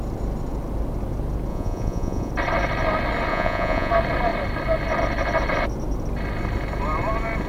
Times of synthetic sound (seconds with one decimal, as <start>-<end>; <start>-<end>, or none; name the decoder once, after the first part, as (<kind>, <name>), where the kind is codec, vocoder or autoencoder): 1.5-2.3 (vocoder, Vocos); 3.3-3.9